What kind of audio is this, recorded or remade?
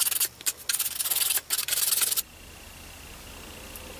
recorded